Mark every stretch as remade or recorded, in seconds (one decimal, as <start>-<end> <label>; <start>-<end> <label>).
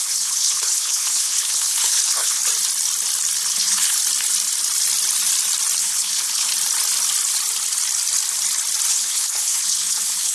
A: 0.0-2.4 remade; 2.4-3.5 recorded; 3.5-4.0 remade; 4.0-5.8 recorded; 5.8-6.5 remade; 6.5-8.9 recorded; 8.9-10.3 remade